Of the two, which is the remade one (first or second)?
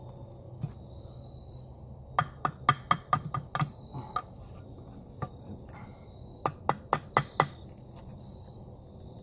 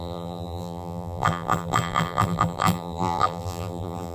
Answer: second